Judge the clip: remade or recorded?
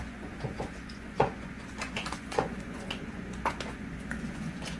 remade